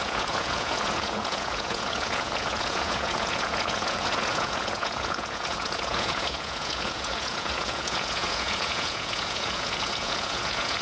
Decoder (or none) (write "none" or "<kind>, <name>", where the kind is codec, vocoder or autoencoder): vocoder, Vocos